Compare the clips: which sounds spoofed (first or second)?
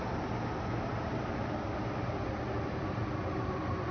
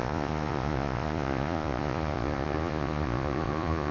second